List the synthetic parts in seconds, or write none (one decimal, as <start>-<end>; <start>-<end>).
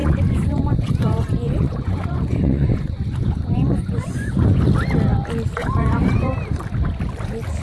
0.0-4.6; 5.6-6.3